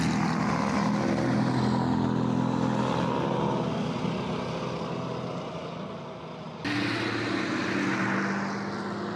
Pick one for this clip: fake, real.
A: real